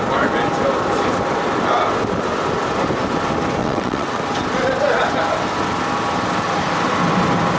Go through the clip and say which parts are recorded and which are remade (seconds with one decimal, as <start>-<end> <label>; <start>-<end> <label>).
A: 0.0-3.6 recorded; 3.6-4.2 remade; 4.2-7.6 recorded